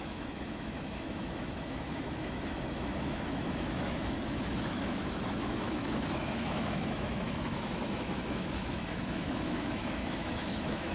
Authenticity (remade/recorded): remade